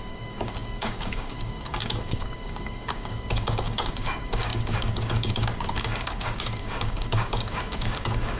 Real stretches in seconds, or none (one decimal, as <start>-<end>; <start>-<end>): none